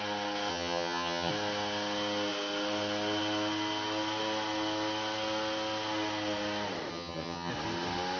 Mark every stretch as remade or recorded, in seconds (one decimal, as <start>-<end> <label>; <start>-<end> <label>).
0.0-0.5 recorded; 0.5-1.3 remade; 1.3-6.9 recorded; 6.9-7.5 remade; 7.5-8.2 recorded

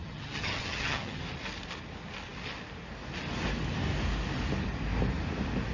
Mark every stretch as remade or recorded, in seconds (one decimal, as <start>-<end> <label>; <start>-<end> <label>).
0.0-1.2 remade; 1.2-5.7 recorded

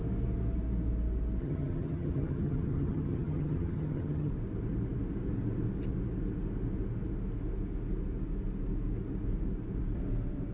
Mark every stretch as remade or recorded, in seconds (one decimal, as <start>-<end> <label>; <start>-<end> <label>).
0.0-1.4 recorded; 1.4-4.3 remade; 4.3-10.5 recorded

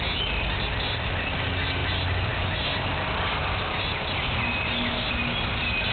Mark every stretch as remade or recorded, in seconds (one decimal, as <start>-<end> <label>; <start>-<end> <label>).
0.0-5.9 recorded